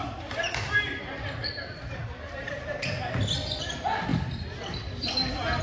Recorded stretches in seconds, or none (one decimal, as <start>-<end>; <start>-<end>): 1.0-1.4; 3.0-5.6